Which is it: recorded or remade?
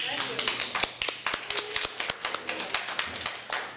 recorded